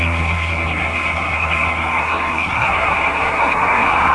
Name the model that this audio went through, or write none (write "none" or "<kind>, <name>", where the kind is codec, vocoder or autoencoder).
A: codec, SNAC